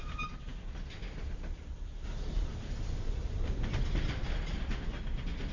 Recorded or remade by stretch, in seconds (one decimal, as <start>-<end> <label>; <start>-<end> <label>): 0.0-5.5 recorded